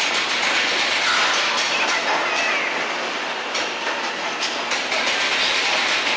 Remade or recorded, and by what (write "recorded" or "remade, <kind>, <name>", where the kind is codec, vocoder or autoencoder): recorded